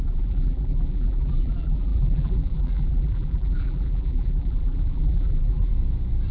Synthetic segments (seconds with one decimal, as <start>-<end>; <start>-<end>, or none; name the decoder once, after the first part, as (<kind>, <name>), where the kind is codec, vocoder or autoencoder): 0.0-5.7 (vocoder, BigVGAN v2)